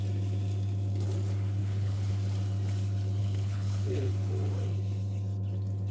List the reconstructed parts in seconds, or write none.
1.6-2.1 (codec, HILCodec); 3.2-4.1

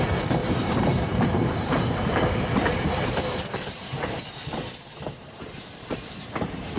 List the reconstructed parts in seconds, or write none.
0.4-1.9 (vocoder, BigVGAN v2); 2.7-6.8